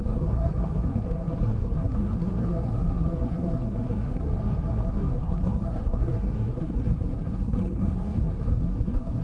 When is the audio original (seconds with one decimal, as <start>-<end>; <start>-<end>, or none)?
none